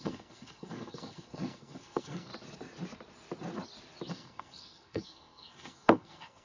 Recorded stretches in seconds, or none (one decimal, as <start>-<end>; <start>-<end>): 2.3-4.1